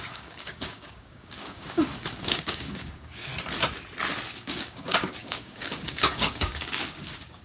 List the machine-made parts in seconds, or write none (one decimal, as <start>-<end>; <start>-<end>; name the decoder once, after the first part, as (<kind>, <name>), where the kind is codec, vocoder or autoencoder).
0.0-3.3 (codec, DAC); 4.3-7.4